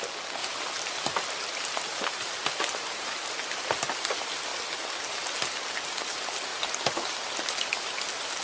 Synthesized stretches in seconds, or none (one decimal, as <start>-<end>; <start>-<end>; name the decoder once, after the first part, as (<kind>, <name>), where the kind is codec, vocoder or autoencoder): 0.4-2.3 (vocoder, BigVGAN v2); 6.5-8.4